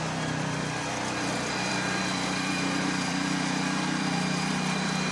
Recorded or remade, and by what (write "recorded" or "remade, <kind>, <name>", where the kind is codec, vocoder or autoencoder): remade, vocoder, BigVGAN v2